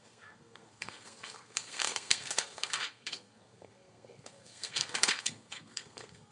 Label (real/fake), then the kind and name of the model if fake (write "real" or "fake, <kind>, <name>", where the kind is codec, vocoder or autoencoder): fake, codec, SNAC